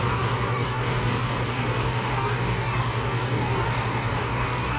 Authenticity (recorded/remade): remade